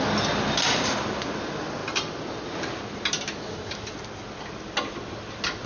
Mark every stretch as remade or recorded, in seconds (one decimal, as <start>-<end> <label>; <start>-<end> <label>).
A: 0.0-5.7 recorded